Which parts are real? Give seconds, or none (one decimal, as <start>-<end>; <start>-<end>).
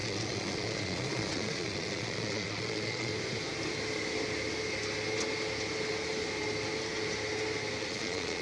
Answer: 3.1-7.8